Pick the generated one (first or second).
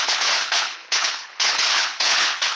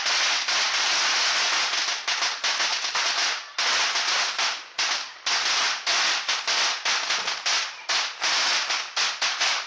first